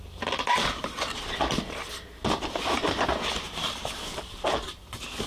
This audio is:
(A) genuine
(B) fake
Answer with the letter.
A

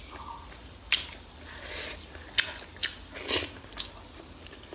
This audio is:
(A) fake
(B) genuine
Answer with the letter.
B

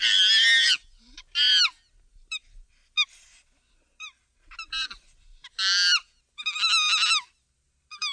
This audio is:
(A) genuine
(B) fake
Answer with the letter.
A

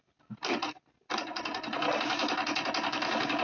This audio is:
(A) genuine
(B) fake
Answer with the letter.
A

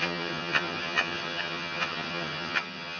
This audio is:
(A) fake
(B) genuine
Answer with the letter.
A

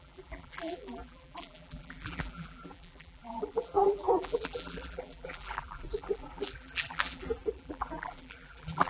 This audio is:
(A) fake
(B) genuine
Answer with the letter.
A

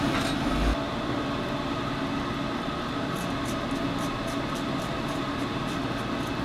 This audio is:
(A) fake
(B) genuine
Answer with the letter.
B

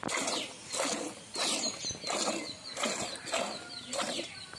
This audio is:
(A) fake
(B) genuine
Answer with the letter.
B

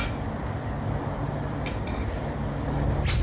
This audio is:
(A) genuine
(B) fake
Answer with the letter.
A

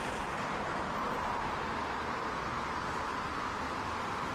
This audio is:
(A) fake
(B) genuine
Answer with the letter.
B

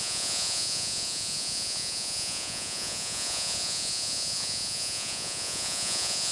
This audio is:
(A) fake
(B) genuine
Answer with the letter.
A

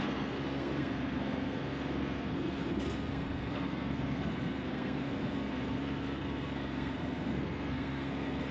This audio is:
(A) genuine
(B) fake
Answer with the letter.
B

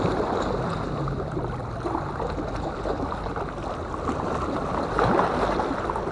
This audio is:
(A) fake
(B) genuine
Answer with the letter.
B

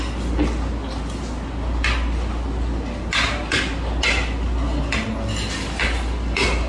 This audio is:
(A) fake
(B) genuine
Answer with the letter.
B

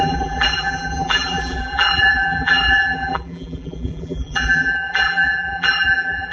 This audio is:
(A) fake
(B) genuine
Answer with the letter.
A